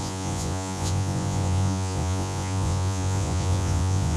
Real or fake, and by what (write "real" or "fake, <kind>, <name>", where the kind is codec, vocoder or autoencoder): fake, vocoder, Vocos